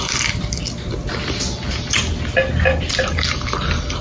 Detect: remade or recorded recorded